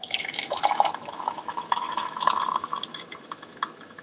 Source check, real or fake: fake